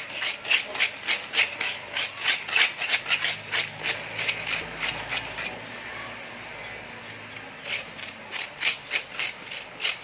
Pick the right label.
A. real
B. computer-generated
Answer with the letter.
A